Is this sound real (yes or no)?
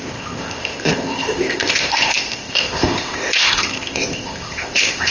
no